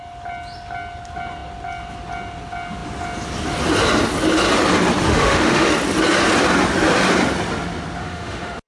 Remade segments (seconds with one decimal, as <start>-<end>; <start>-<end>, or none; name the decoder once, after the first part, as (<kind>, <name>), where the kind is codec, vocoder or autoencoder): 5.1-5.7 (autoencoder, DAC-VAE); 8.0-8.7